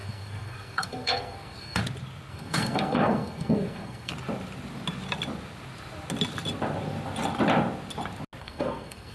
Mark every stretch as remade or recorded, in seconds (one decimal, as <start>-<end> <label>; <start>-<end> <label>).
0.0-1.8 remade; 1.8-2.3 recorded; 2.3-4.1 remade; 4.1-8.4 recorded; 8.4-9.1 remade